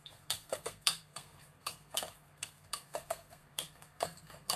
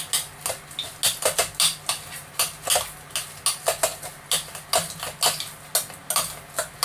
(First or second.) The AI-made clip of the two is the first